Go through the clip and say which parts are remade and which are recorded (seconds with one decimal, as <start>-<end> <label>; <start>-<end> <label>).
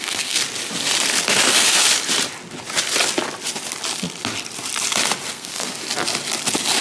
0.0-0.4 remade; 0.4-1.5 recorded; 1.5-1.9 remade; 1.9-5.3 recorded; 5.3-5.8 remade; 5.8-6.8 recorded